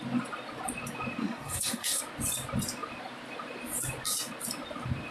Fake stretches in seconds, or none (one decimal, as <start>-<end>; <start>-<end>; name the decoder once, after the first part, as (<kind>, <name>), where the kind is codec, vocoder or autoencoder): 1.2-2.0 (codec, SNAC)